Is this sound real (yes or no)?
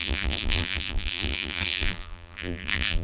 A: no